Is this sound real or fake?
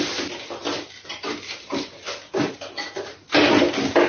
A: real